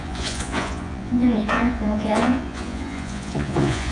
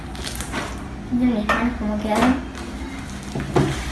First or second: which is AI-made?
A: first